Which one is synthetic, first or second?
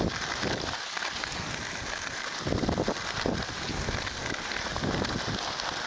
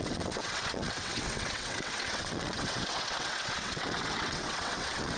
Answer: second